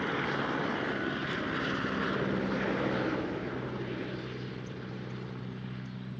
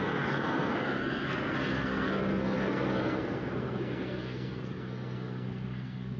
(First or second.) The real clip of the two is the first